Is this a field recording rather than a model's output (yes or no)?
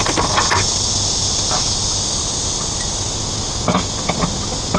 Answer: yes